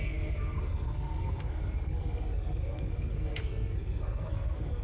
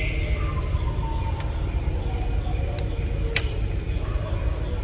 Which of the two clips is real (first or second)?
second